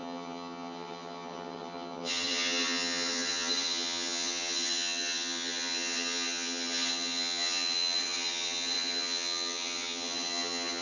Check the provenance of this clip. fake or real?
fake